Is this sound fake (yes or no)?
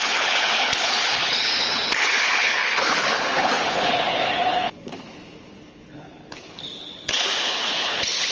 yes